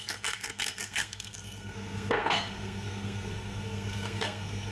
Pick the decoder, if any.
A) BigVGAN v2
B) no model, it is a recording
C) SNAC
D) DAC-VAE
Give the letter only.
C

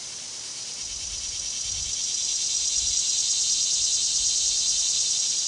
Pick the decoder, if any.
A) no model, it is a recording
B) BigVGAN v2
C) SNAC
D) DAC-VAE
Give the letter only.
A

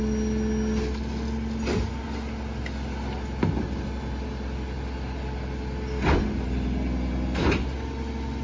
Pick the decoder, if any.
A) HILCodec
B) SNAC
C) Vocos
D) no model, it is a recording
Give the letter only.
D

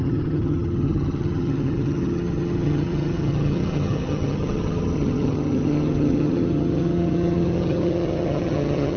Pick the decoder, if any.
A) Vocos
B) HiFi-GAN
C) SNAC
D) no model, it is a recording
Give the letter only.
B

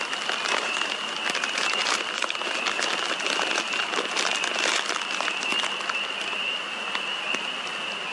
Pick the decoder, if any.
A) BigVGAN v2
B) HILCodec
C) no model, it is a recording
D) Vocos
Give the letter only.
C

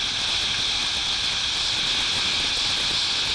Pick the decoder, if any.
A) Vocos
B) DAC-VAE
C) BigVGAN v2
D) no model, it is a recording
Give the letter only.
D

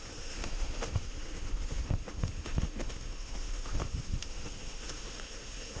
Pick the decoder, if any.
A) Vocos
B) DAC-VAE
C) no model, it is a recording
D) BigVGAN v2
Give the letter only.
B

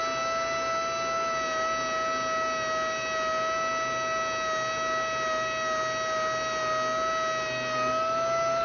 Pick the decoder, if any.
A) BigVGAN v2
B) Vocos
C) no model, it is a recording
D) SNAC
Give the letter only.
C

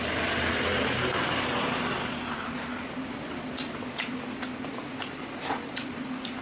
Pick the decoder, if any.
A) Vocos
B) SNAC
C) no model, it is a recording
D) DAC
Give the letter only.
C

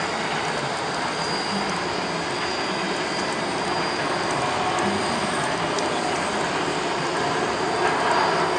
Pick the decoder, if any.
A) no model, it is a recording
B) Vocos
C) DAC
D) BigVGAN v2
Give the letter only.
A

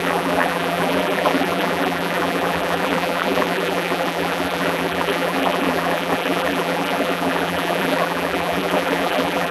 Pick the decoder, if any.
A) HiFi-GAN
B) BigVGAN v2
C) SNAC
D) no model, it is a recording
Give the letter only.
B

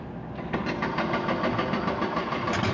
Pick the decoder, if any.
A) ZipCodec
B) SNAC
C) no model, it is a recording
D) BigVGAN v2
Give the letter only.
C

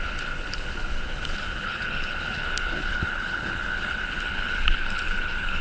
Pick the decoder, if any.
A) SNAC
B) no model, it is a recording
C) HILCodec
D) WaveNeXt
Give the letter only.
C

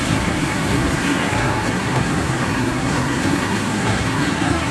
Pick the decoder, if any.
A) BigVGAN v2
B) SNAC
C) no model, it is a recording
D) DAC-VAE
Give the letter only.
B